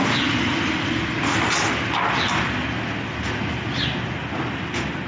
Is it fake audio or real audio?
real